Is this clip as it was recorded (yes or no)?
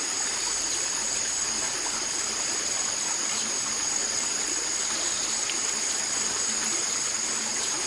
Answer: yes